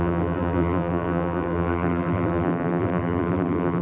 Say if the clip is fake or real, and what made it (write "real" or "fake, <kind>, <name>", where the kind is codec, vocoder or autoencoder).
fake, vocoder, BigVGAN v2